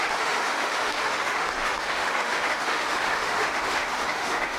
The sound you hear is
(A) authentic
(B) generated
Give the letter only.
B